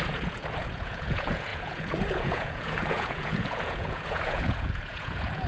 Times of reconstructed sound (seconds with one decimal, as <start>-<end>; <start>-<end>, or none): 0.0-5.5